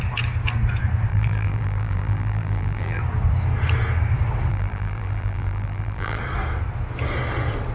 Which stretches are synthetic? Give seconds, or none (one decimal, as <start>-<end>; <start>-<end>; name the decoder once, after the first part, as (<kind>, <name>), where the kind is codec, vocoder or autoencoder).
1.1-3.0 (vocoder, BigVGAN v2); 4.5-6.2